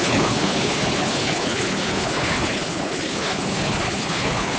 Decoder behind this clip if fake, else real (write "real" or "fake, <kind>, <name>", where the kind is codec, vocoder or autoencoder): fake, codec, HILCodec